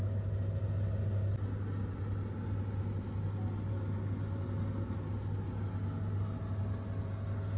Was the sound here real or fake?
real